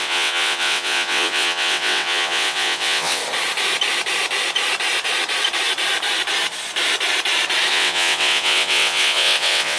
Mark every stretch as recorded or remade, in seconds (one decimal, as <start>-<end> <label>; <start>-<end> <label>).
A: 0.0-3.2 remade; 3.2-7.7 recorded; 7.7-9.8 remade